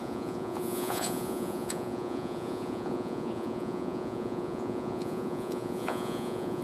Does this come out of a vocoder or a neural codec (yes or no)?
yes